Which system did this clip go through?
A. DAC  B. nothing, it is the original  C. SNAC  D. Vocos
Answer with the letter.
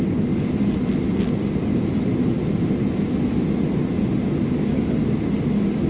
B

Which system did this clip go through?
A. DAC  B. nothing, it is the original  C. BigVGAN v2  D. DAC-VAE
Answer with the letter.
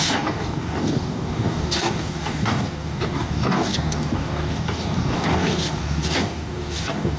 A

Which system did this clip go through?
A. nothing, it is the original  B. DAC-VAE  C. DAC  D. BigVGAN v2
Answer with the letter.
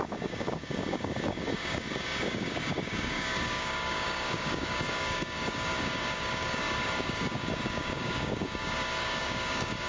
C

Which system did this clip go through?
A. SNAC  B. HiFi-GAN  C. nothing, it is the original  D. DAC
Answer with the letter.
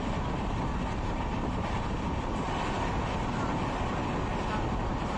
C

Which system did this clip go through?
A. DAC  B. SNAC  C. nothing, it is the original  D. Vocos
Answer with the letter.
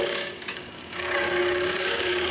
A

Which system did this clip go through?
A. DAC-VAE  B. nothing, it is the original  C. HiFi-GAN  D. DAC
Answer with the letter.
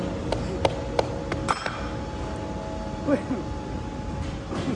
B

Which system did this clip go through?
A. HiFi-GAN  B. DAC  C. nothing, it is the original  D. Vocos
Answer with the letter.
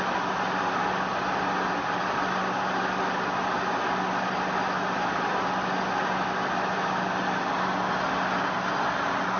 C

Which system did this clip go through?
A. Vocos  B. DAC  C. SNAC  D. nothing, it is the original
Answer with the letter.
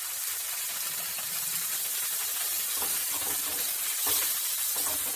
D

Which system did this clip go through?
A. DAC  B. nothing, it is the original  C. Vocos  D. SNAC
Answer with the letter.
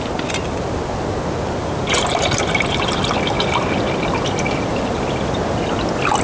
B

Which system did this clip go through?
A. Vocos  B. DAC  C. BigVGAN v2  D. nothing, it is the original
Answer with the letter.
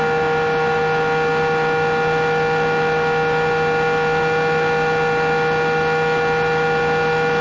D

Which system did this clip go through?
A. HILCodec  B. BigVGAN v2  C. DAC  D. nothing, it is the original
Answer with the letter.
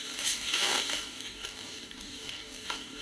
C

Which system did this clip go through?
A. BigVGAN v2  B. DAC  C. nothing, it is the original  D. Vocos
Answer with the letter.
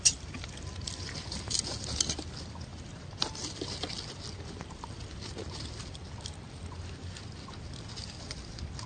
C